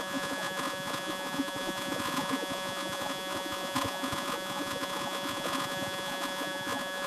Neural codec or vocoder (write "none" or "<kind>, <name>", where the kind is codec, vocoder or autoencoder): vocoder, Vocos